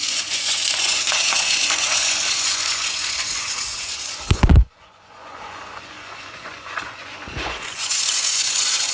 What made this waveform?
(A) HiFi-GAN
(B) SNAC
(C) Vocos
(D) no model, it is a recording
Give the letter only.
C